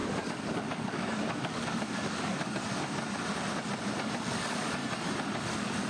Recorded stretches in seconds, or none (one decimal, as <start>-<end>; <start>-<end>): 2.6-4.2; 4.8-5.4